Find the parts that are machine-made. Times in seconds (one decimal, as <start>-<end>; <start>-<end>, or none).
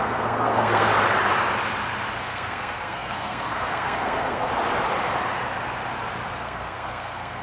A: 0.0-0.9; 2.2-4.5; 6.3-7.4